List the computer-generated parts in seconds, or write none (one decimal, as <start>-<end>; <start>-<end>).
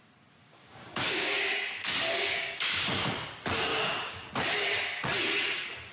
0.4-2.9; 3.7-4.3